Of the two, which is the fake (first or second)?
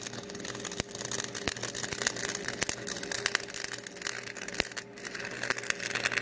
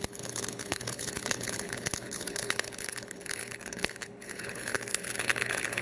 second